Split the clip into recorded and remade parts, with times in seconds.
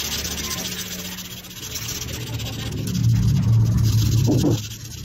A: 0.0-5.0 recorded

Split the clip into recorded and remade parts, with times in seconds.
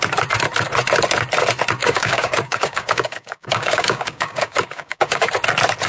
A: 0.0-1.8 recorded; 1.8-5.3 remade; 5.3-5.9 recorded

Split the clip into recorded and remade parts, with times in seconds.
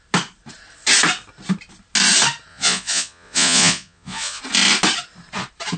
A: 0.0-2.5 recorded; 2.5-4.4 remade; 4.4-5.8 recorded